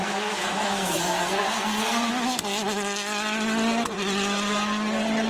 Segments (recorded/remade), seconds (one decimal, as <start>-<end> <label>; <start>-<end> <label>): 0.0-2.1 remade; 2.1-5.3 recorded